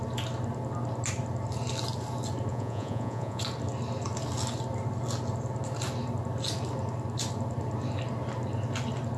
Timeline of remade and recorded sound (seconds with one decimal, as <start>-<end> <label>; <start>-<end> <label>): 0.0-2.5 recorded; 2.5-3.4 remade; 3.4-9.2 recorded